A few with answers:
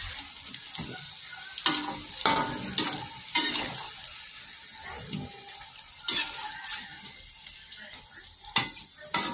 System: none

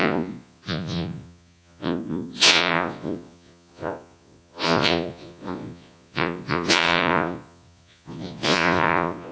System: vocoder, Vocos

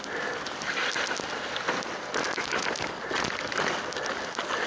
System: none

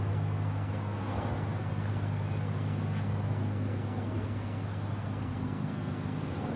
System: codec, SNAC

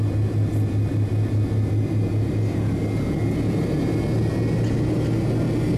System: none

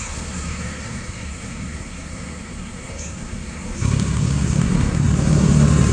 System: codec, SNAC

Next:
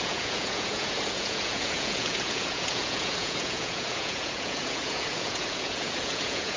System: vocoder, Vocos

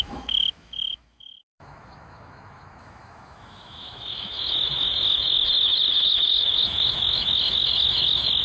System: autoencoder, DAC-VAE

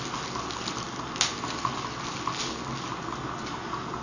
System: none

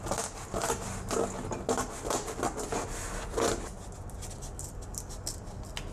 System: none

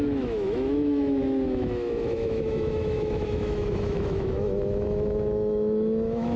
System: autoencoder, DAC-VAE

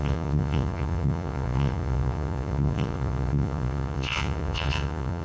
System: vocoder, Vocos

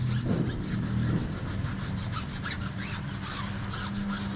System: none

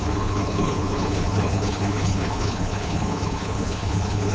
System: codec, HILCodec